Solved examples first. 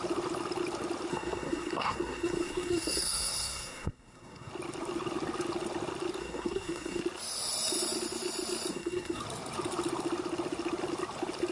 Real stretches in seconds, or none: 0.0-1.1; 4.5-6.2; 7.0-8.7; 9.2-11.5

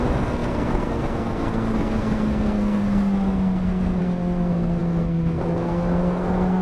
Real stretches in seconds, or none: none

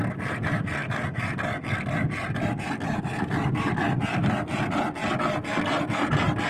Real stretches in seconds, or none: 0.0-6.5

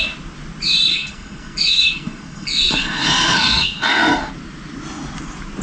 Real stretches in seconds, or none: 0.0-0.9; 4.3-5.6

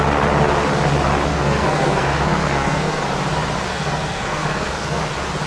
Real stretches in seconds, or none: 0.0-1.3; 3.0-3.7; 5.0-5.5

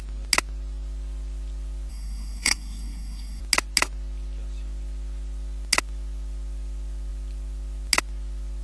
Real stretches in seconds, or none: 0.0-1.9; 3.4-8.6

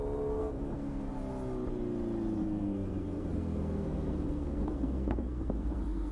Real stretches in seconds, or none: 0.0-0.4; 1.1-2.4